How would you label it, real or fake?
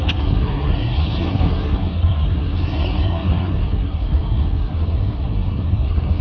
fake